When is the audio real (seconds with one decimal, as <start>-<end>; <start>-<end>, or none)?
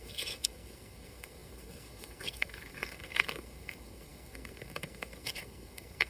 none